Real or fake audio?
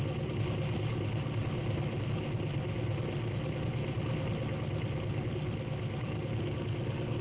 real